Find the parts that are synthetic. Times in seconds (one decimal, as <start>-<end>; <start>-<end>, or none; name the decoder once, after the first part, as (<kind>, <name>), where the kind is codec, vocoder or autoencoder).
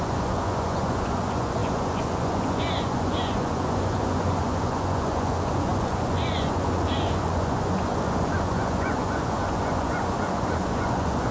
0.0-11.3 (vocoder, Vocos)